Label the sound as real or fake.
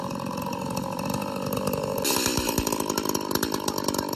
fake